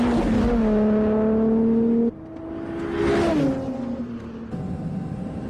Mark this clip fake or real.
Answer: real